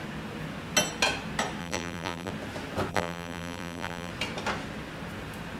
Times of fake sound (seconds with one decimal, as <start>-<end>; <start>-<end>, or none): 1.6-2.3; 2.9-4.1